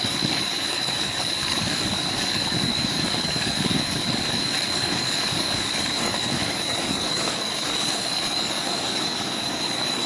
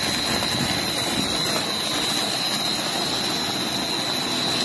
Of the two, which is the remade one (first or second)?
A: first